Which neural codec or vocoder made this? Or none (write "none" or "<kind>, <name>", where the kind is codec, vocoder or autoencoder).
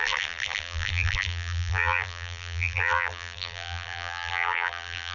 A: vocoder, BigVGAN v2